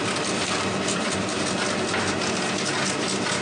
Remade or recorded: recorded